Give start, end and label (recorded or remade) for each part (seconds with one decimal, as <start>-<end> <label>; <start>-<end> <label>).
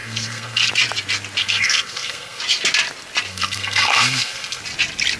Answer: 0.0-0.7 remade; 0.7-1.4 recorded; 1.4-2.4 remade; 2.4-3.3 recorded; 3.3-4.6 remade; 4.6-5.2 recorded